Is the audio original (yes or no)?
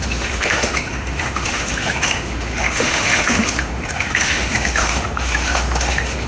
no